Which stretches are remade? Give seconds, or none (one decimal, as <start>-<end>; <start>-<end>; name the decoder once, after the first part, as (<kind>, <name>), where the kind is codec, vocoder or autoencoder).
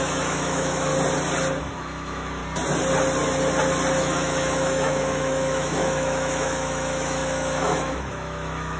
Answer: 0.0-0.9 (autoencoder, DAC-VAE); 1.6-2.4; 4.0-8.8